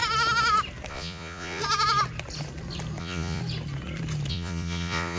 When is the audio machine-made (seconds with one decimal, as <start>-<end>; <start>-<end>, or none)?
0.9-1.6; 3.0-3.4; 4.3-5.2